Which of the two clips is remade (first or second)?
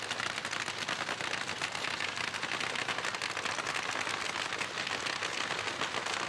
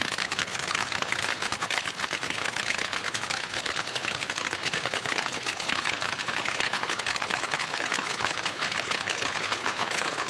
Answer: second